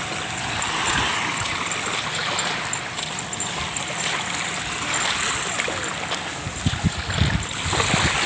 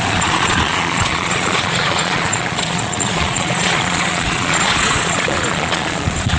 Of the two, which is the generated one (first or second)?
second